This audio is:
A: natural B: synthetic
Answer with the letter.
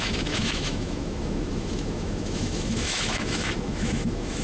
B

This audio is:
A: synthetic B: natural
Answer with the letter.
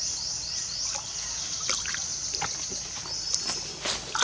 B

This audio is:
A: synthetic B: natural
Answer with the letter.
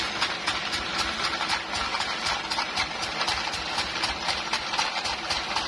B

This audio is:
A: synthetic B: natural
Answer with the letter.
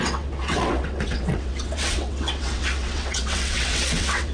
A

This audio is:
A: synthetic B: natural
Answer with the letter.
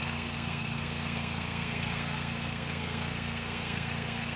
A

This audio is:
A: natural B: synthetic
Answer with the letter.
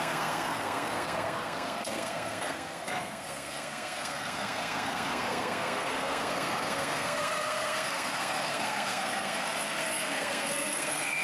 B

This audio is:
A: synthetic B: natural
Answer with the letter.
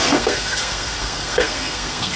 A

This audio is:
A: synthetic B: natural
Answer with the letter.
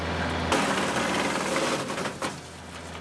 B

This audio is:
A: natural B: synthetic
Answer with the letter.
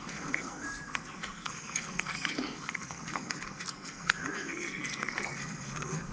B